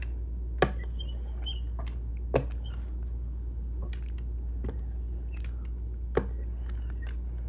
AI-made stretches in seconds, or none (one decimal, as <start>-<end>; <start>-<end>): none